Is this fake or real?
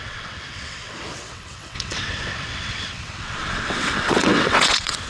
fake